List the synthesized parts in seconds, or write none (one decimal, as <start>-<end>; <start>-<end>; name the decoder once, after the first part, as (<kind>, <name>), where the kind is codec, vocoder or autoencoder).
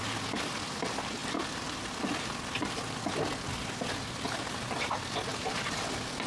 none